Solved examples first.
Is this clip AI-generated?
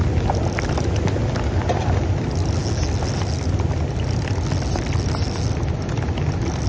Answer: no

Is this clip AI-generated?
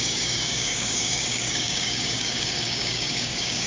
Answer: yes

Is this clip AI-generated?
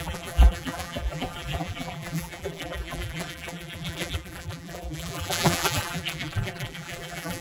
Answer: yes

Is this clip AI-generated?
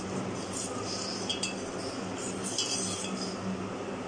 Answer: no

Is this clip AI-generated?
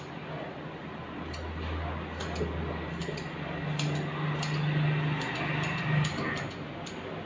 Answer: no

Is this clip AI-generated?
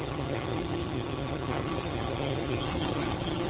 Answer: yes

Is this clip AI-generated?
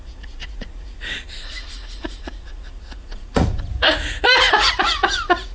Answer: yes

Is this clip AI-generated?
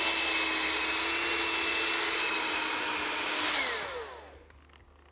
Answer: no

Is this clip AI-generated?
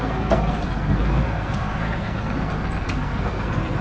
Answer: yes